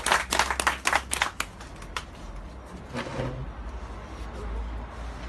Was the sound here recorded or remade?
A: recorded